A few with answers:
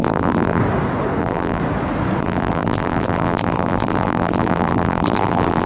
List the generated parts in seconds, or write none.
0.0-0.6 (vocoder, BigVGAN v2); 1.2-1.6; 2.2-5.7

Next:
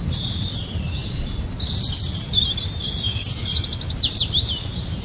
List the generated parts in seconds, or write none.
0.0-1.0 (vocoder, BigVGAN v2); 4.0-5.0

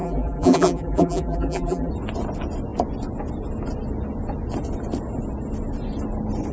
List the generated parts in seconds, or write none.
0.0-1.9 (vocoder, BigVGAN v2)

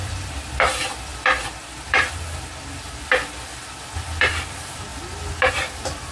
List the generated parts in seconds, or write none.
0.0-4.9 (vocoder, BigVGAN v2); 5.5-6.1

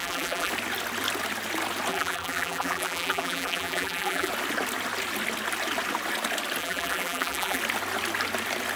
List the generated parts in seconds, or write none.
0.0-0.5 (vocoder, BigVGAN v2); 1.9-4.3; 6.6-7.6

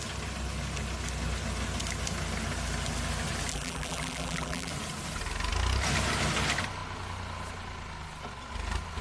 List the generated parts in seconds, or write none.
3.5-4.7 (vocoder, BigVGAN v2)

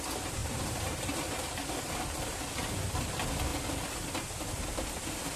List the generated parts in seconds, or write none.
0.4-1.7 (vocoder, BigVGAN v2)

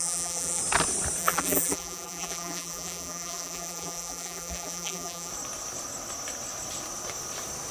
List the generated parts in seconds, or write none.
0.0-0.6 (vocoder, BigVGAN v2); 1.2-5.3